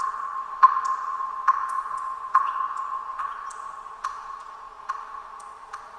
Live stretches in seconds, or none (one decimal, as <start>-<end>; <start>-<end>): 0.0-1.6; 3.2-3.9; 4.9-6.0